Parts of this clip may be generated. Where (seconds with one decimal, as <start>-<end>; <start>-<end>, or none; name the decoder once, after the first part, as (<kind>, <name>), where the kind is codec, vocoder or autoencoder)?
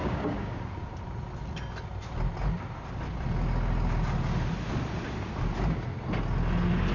0.0-0.6 (codec, DAC)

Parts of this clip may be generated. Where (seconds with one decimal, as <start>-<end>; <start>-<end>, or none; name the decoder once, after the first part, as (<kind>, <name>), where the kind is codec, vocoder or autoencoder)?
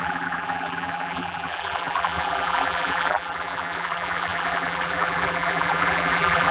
0.0-6.5 (vocoder, BigVGAN v2)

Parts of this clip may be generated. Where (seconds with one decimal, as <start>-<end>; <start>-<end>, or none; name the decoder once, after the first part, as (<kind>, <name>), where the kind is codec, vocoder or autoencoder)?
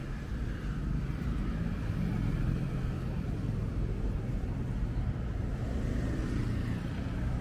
none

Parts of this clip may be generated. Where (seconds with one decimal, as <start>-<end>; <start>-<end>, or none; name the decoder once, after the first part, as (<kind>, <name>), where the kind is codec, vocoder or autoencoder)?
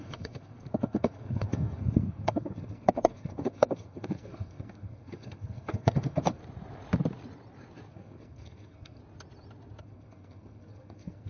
0.0-6.4 (codec, SNAC); 7.9-9.0; 9.8-11.3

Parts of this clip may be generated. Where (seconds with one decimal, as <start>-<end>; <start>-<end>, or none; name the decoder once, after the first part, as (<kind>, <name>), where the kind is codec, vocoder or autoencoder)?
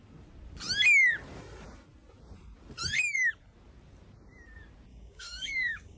4.9-6.0 (codec, DAC)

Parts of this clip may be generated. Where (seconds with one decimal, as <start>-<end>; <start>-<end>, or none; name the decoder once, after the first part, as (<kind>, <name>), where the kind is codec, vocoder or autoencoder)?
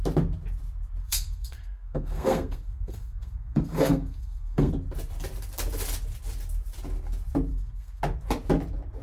1.0-4.7 (codec, SNAC); 7.5-8.0